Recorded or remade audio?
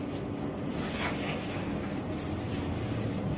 recorded